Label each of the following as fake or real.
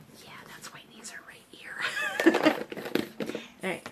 fake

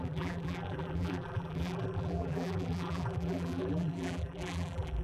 fake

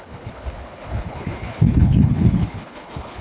fake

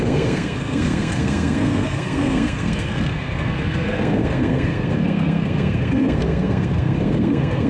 fake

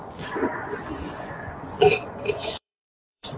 fake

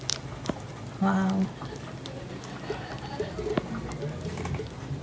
real